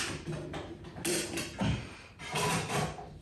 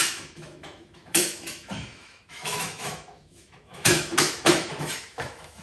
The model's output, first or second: second